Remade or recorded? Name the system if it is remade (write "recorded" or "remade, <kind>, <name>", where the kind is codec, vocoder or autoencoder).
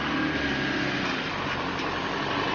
recorded